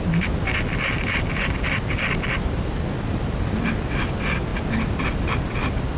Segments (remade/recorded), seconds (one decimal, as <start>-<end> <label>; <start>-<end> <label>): 0.0-6.0 recorded